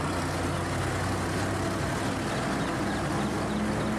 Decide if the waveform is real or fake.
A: real